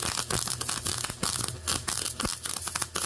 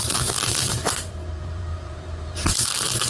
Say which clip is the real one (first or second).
first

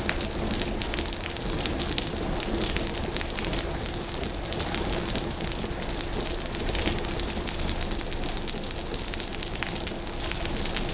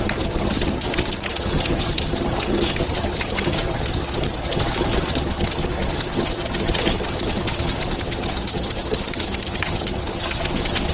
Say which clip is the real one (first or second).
first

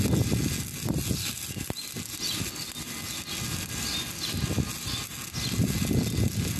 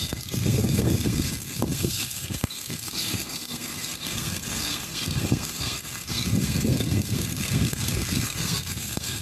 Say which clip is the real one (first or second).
first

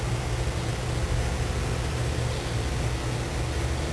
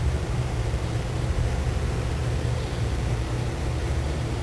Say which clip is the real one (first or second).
first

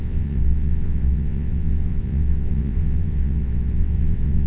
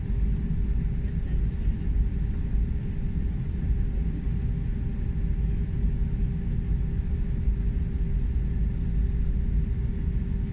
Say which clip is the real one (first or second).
second